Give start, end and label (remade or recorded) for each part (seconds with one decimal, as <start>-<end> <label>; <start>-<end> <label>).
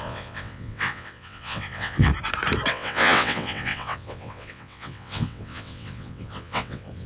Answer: 0.0-2.1 remade; 2.1-2.7 recorded; 2.7-7.1 remade